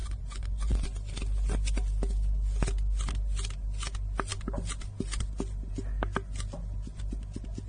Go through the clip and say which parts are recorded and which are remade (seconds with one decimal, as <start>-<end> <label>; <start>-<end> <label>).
0.0-0.8 remade; 0.8-7.7 recorded